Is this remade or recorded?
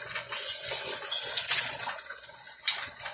remade